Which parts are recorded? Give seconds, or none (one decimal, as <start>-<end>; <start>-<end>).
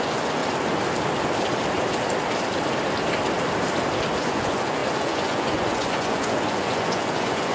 0.4-4.2